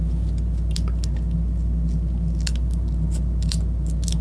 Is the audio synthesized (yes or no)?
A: no